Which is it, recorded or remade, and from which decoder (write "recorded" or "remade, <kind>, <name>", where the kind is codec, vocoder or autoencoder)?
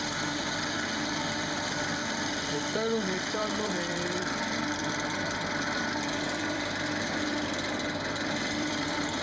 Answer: remade, vocoder, BigVGAN v2